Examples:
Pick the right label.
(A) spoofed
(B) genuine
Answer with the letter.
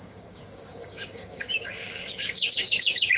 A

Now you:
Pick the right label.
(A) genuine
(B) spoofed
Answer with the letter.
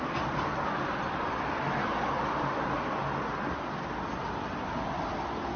A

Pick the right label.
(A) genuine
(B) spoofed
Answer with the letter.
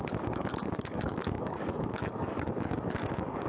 B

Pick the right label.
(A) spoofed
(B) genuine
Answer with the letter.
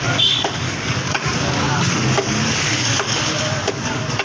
A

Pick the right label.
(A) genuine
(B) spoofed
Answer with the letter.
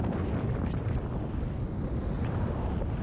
A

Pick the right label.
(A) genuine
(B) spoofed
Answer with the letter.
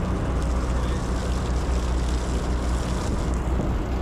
A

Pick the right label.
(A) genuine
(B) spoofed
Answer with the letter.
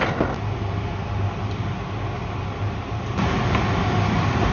A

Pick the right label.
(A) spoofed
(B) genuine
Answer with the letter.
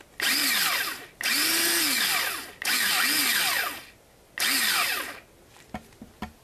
B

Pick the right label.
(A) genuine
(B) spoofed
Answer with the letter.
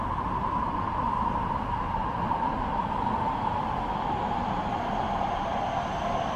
A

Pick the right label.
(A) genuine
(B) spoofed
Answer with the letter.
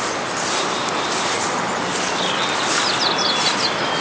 A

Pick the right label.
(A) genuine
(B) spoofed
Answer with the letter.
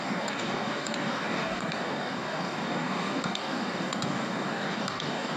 B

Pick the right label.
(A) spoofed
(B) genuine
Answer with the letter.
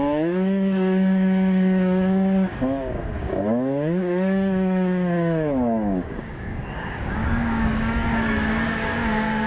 A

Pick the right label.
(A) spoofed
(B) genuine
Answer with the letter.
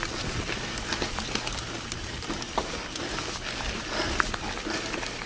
B